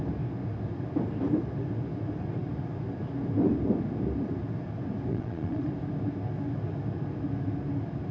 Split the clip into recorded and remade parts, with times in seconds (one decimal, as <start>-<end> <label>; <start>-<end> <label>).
0.0-5.1 recorded; 5.1-5.7 remade; 5.7-8.1 recorded